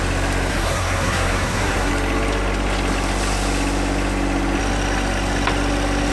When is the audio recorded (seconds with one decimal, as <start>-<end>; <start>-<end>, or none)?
0.0-0.5; 1.9-6.1